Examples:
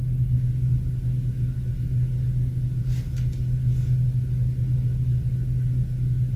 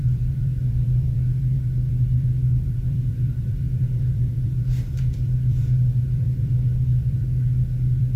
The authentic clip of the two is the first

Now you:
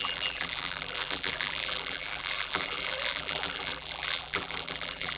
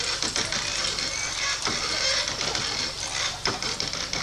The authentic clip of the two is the second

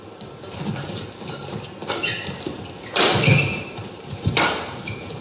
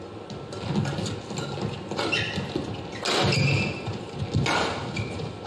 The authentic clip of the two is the second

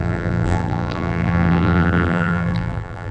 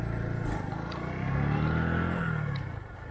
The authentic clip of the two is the second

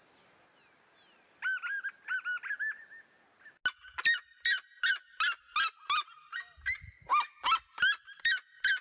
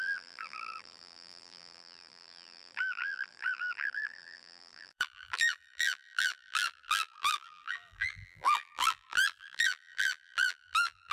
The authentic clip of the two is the first